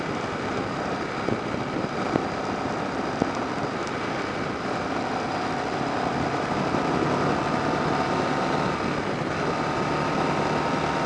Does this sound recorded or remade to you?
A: recorded